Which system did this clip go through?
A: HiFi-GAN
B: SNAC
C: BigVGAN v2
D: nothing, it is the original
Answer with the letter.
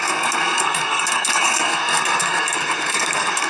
B